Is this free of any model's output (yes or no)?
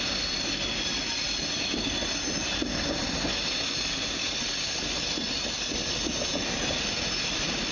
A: yes